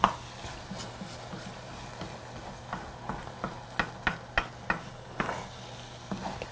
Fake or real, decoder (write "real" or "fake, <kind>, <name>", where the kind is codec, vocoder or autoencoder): real